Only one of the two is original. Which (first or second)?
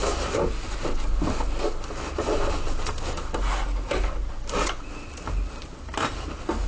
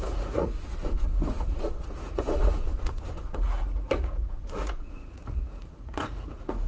first